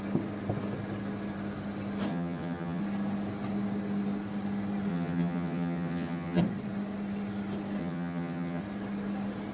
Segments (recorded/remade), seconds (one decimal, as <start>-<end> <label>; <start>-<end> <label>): 0.0-2.1 recorded; 2.1-2.8 remade; 2.8-4.9 recorded; 4.9-6.4 remade; 6.4-7.8 recorded; 7.8-8.6 remade; 8.6-9.5 recorded